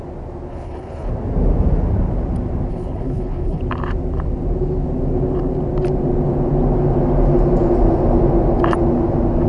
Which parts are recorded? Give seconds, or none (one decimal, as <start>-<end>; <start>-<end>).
0.0-0.5; 1.1-2.7; 3.6-9.5